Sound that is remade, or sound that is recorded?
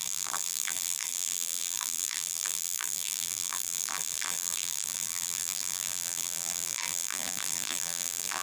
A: remade